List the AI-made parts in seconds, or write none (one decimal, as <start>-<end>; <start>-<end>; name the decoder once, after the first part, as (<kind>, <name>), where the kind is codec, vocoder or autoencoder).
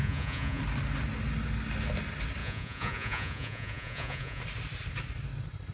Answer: 0.0-0.6 (vocoder, Vocos); 2.4-4.4